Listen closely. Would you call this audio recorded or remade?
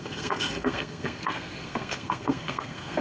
remade